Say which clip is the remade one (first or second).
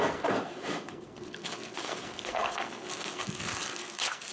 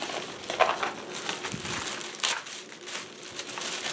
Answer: first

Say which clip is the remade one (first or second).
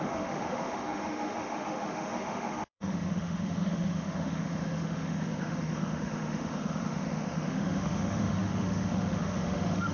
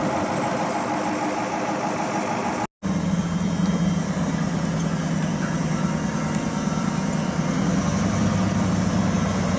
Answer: first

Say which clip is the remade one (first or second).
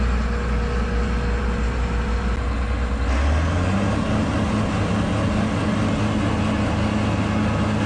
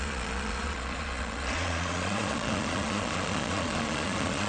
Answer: second